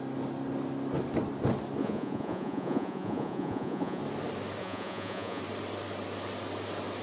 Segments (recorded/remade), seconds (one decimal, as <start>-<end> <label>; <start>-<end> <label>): 0.0-1.8 recorded; 1.8-4.0 remade; 4.0-4.6 recorded; 4.6-5.4 remade; 5.4-7.0 recorded